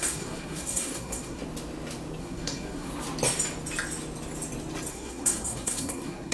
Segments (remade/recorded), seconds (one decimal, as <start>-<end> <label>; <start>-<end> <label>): 0.0-1.4 remade; 1.4-2.2 recorded; 2.2-2.9 remade; 2.9-4.9 recorded; 4.9-6.3 remade